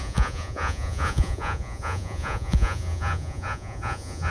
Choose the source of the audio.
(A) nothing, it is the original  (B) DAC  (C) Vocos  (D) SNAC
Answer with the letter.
C